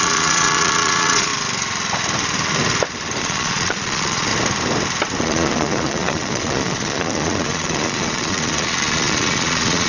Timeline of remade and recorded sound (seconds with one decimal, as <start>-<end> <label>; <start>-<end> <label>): 0.0-1.3 remade; 1.3-3.2 recorded; 3.2-4.3 remade; 4.3-5.2 recorded; 5.2-9.9 remade